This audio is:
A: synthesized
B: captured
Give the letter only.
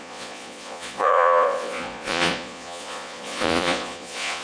A